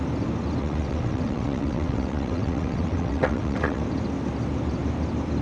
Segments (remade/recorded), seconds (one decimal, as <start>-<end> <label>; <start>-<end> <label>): 0.0-0.6 recorded; 0.6-3.8 remade; 3.8-5.4 recorded